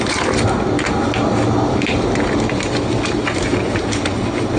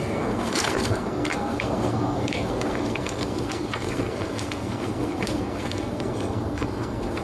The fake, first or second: second